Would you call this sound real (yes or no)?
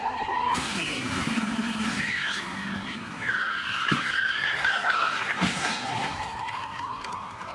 no